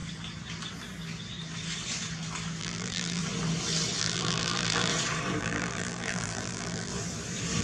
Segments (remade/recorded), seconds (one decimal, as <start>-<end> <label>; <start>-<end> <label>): 0.0-2.6 recorded; 2.6-3.2 remade; 3.2-4.0 recorded; 4.0-4.9 remade; 4.9-5.4 recorded; 5.4-6.9 remade; 6.9-7.6 recorded